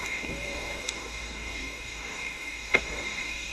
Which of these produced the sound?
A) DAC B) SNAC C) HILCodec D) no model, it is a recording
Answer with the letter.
A